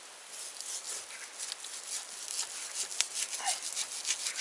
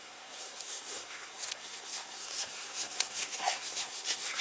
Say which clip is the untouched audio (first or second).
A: first